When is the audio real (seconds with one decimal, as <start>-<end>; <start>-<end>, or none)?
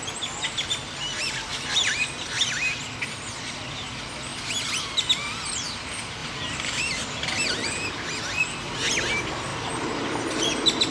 0.0-1.5; 2.0-6.2; 8.4-10.9